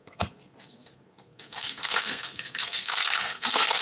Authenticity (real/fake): fake